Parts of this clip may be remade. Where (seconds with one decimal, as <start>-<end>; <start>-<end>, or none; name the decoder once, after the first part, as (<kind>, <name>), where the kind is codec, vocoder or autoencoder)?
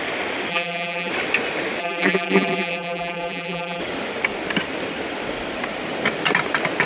0.5-1.1 (vocoder, BigVGAN v2); 1.8-3.8